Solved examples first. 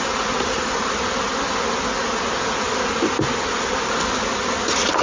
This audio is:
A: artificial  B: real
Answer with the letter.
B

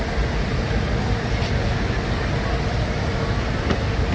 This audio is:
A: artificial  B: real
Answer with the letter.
B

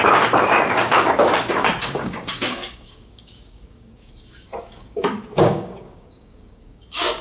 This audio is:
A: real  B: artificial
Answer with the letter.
B